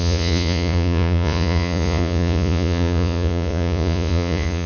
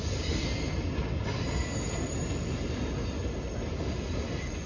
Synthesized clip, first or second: first